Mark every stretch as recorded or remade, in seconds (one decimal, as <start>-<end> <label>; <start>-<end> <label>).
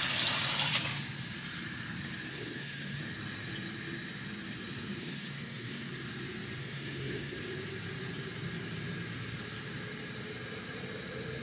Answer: 0.0-2.3 recorded; 2.3-3.0 remade; 3.0-5.0 recorded; 5.0-5.9 remade; 5.9-6.6 recorded; 6.6-7.4 remade; 7.4-11.4 recorded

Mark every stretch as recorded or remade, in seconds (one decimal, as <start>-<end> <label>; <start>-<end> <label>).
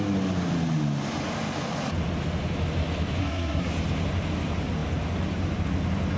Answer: 0.0-3.2 recorded; 3.2-3.7 remade; 3.7-6.2 recorded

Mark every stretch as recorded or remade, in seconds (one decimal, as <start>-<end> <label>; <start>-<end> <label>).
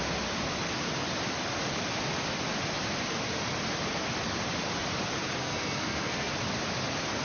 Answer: 0.0-5.4 recorded; 5.4-6.3 remade; 6.3-7.2 recorded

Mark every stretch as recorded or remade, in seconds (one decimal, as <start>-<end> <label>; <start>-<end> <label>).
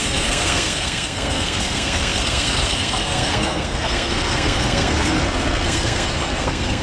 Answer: 0.0-6.8 remade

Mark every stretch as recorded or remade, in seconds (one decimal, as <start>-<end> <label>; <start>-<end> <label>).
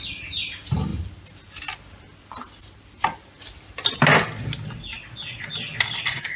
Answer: 0.0-6.4 recorded